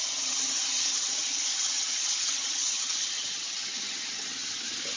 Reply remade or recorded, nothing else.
remade